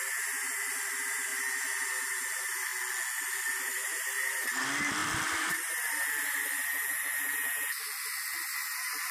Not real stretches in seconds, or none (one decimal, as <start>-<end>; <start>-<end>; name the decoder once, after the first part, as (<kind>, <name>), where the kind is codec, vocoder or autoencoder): 0.0-2.7 (vocoder, BigVGAN v2); 3.5-9.1